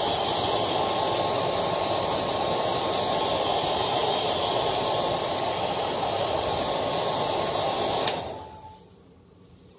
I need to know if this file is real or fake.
real